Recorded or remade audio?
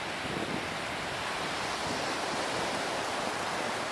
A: recorded